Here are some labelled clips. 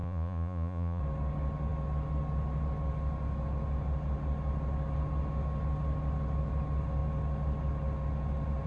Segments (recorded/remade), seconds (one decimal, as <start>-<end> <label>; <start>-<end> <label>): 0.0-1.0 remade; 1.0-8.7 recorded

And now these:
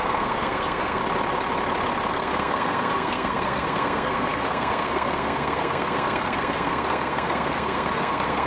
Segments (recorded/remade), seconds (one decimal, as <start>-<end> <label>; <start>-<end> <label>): 0.0-1.0 remade; 1.0-2.1 recorded; 2.1-8.5 remade

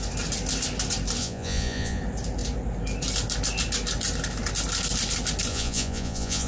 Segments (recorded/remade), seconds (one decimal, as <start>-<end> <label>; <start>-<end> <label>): 0.0-1.2 recorded; 1.2-2.0 remade; 2.0-5.5 recorded; 5.5-6.5 remade

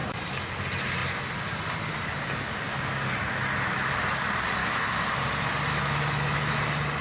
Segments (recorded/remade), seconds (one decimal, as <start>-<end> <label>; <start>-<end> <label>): 0.0-0.5 remade; 0.5-4.6 recorded; 4.6-5.1 remade; 5.1-5.7 recorded; 5.7-6.6 remade; 6.6-7.0 recorded

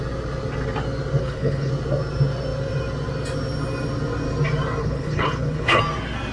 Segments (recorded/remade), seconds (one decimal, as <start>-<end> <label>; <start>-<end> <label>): 0.0-1.2 recorded; 1.2-1.7 remade; 1.7-4.8 recorded; 4.8-5.8 remade; 5.8-6.3 recorded

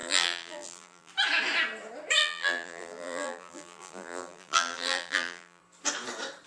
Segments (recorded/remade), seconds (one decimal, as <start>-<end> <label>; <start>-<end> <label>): 0.0-1.1 remade; 1.1-2.2 recorded; 2.2-5.6 remade; 5.6-6.5 recorded